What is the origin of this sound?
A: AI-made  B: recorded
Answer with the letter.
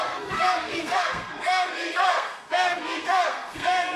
A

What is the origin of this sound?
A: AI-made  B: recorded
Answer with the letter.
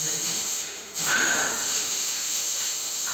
A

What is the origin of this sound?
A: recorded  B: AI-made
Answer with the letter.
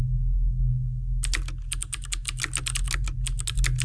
A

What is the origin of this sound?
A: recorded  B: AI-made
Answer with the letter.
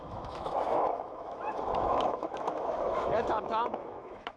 B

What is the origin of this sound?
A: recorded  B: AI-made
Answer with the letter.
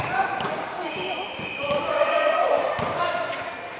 A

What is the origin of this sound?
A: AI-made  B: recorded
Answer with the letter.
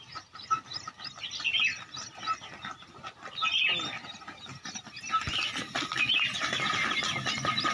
B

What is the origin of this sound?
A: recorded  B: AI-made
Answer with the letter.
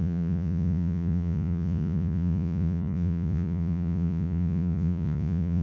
B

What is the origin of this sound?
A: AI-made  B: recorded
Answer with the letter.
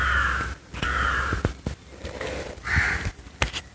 B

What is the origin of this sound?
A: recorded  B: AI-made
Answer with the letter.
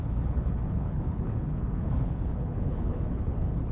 B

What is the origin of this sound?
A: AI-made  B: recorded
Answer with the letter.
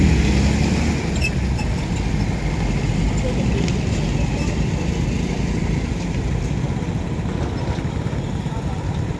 B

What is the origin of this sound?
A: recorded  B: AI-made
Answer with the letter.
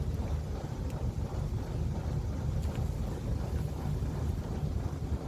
A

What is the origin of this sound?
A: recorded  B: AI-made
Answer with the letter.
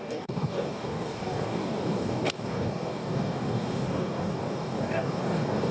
B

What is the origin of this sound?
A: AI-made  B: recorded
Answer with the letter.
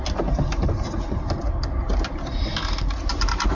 B